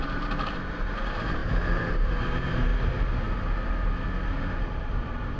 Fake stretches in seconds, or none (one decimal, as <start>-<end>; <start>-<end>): 0.0-2.7; 4.8-5.4